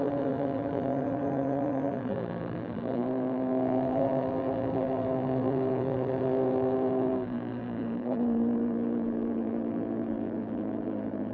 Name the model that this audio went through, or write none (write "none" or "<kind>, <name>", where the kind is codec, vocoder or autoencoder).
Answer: vocoder, BigVGAN v2